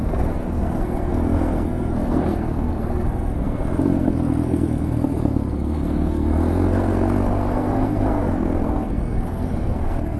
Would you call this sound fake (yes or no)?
yes